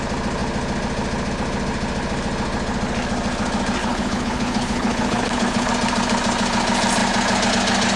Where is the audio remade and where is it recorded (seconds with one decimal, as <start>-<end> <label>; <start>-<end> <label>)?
0.0-3.8 recorded; 3.8-5.7 remade; 5.7-8.0 recorded